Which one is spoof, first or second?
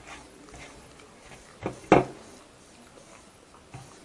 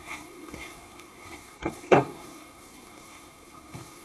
second